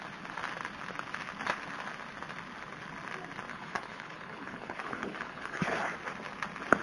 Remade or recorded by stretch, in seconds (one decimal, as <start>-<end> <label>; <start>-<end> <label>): 0.0-3.5 recorded; 3.5-5.8 remade; 5.8-6.8 recorded